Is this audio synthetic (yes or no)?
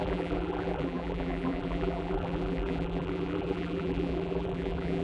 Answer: yes